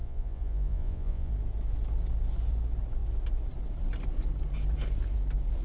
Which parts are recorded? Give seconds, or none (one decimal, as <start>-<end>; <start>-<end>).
1.3-5.6